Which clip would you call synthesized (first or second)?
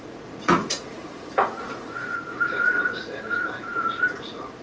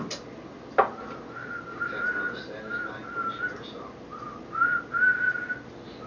first